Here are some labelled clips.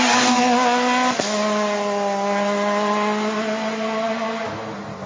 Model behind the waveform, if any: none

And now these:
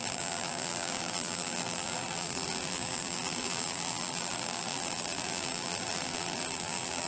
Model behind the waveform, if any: vocoder, BigVGAN v2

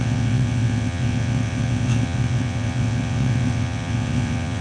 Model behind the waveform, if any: vocoder, WaveNeXt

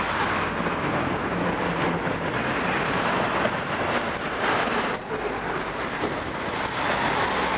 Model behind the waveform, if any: none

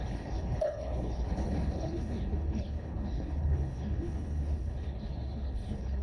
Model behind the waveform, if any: codec, HILCodec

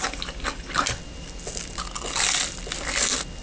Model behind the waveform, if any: none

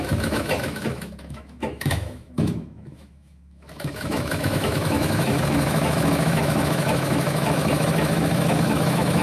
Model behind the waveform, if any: autoencoder, DAC-VAE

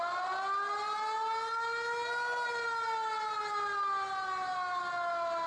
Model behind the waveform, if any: none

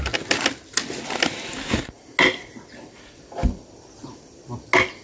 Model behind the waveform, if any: none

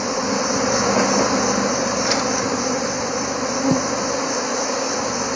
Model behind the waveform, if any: none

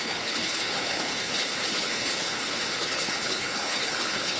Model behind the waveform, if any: codec, HILCodec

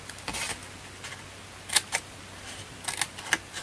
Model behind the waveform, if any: none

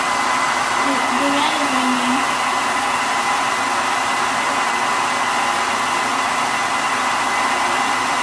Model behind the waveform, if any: none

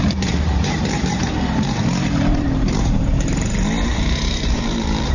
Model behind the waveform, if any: vocoder, BigVGAN v2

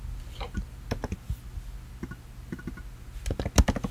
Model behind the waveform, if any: none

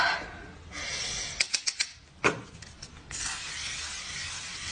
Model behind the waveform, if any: none